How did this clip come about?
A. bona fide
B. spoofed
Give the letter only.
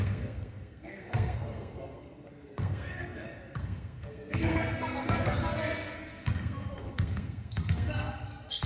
B